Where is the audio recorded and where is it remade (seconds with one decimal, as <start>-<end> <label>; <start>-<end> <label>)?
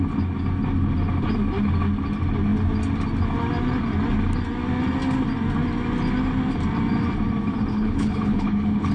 0.0-7.7 recorded; 7.7-8.9 remade